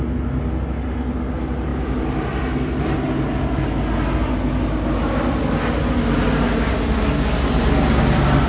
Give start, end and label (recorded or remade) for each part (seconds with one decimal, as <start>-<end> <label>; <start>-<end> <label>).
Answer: 0.0-8.5 recorded